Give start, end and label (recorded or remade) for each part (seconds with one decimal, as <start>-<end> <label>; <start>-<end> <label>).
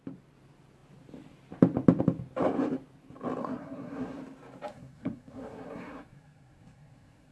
0.0-3.4 recorded; 3.4-4.2 remade; 4.2-4.7 recorded; 4.7-7.3 remade